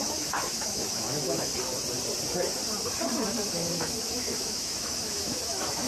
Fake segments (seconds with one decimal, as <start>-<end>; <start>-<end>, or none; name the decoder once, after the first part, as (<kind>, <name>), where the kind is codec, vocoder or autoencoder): 0.0-1.5 (autoencoder, DAC-VAE); 3.5-5.9

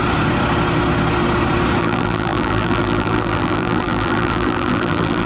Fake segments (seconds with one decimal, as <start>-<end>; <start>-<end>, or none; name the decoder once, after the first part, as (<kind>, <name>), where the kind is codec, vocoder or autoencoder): 1.8-5.3 (vocoder, BigVGAN v2)

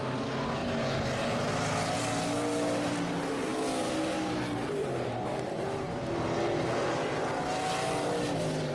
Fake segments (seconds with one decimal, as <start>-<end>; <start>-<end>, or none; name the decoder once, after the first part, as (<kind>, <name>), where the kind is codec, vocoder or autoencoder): none

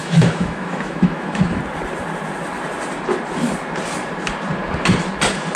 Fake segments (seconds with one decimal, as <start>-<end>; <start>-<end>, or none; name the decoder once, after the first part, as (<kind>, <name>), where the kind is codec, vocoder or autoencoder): 0.0-1.6 (autoencoder, DAC-VAE)

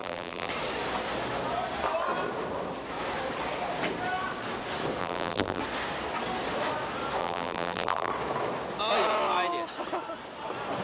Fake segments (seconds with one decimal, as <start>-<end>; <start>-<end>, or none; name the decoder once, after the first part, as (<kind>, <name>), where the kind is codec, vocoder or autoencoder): 0.0-0.5 (vocoder, BigVGAN v2); 5.0-5.6; 7.2-8.1

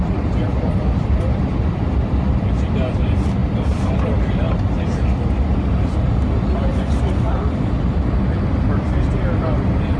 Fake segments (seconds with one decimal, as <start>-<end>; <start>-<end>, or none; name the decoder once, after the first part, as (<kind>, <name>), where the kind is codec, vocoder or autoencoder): 0.5-3.0 (vocoder, BigVGAN v2)

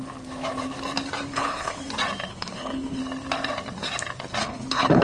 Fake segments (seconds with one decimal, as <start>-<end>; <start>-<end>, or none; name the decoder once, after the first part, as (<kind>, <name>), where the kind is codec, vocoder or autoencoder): 1.3-1.8 (codec, HILCodec); 2.3-3.0; 4.4-5.0

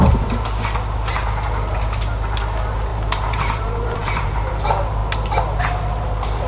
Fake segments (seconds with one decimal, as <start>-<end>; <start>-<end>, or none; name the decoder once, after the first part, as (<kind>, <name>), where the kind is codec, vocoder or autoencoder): 2.9-4.5 (vocoder, BigVGAN v2)